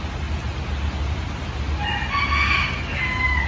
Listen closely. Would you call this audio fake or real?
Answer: real